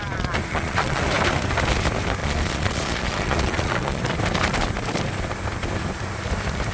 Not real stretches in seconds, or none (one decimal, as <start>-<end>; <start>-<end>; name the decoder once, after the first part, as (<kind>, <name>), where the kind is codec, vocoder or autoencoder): 0.5-1.0 (vocoder, Vocos); 2.2-4.0